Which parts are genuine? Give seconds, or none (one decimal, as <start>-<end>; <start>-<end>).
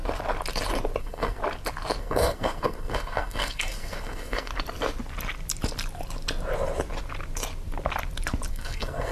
0.0-1.0; 1.4-2.0; 4.5-8.5